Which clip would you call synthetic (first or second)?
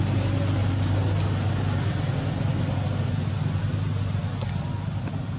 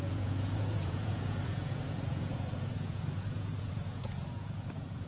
second